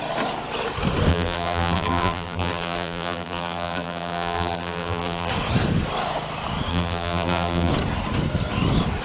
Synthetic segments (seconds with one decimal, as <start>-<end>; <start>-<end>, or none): 1.1-5.3; 6.7-7.7